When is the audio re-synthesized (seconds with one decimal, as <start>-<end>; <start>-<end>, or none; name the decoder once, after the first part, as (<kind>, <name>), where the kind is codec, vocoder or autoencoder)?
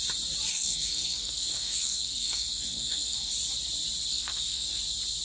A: 0.5-3.3 (codec, SNAC); 4.1-4.8